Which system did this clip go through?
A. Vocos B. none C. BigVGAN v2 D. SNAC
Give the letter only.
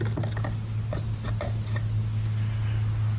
B